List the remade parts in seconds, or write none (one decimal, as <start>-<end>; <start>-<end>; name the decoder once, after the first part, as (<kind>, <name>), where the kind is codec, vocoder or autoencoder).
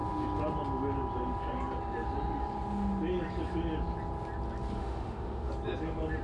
4.8-5.5 (autoencoder, DAC-VAE)